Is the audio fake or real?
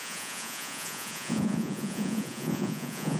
fake